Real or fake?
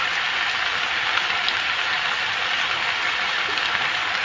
real